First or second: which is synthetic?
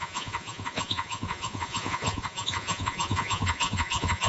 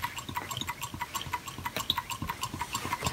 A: first